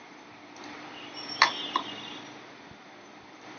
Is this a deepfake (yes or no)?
yes